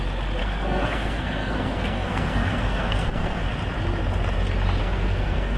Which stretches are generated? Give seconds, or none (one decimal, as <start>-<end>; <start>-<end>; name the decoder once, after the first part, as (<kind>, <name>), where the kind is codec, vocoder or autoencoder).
0.4-3.5 (codec, SNAC); 4.8-5.6

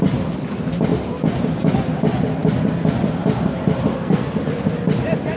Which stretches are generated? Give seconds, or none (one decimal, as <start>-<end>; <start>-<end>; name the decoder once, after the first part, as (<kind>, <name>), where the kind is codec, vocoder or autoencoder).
3.9-4.4 (codec, SNAC)

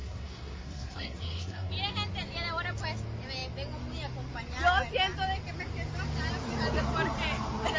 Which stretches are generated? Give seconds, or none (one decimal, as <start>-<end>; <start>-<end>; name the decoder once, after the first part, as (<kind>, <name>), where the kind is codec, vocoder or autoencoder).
0.0-1.7 (codec, SNAC)

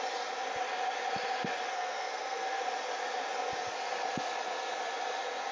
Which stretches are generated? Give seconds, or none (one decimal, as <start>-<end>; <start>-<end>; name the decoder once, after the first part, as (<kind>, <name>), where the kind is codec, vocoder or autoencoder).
1.7-2.6 (codec, SNAC)

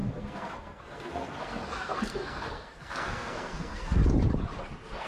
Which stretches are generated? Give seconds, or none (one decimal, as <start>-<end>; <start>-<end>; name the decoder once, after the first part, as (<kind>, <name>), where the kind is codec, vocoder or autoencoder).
0.0-4.0 (codec, SNAC); 4.6-5.1

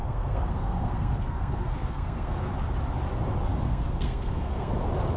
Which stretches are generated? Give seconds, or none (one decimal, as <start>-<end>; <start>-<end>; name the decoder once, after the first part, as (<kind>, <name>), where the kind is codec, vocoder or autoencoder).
0.0-2.3 (codec, SNAC); 3.5-4.7

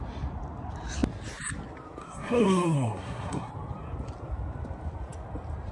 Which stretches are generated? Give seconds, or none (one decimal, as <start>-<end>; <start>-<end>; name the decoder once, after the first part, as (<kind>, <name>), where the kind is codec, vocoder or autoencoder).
2.0-3.5 (codec, SNAC)